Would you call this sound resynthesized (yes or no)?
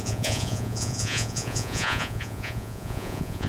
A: yes